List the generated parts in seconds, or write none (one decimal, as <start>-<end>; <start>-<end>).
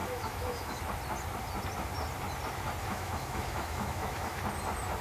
0.0-0.8; 2.8-4.4